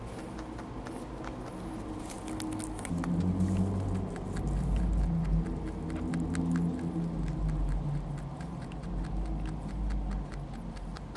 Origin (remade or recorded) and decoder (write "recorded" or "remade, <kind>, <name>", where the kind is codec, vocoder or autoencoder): recorded